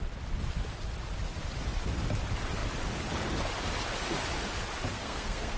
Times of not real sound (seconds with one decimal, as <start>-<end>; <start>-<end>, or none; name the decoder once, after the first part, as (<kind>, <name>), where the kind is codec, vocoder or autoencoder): 4.9-5.6 (codec, SNAC)